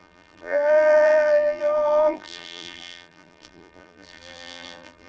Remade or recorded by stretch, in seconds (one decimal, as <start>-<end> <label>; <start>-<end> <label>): 0.0-5.1 remade